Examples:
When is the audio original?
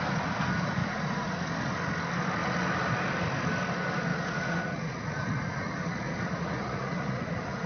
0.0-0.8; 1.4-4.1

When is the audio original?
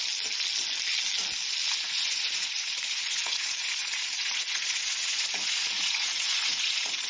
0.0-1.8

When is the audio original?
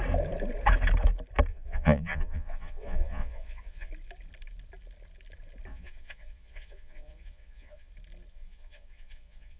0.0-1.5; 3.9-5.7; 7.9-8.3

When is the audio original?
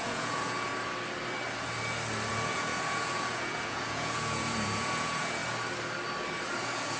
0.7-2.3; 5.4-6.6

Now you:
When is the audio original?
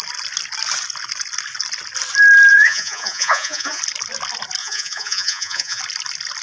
0.0-2.5; 3.8-4.6; 5.8-6.4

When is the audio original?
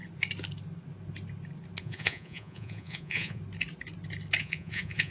0.0-1.8; 3.4-4.4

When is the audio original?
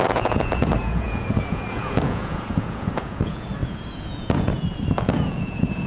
none